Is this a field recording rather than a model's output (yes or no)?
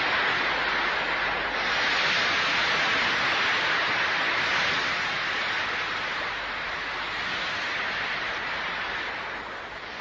yes